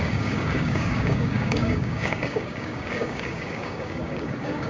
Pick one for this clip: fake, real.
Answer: fake